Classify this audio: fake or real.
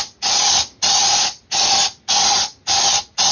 real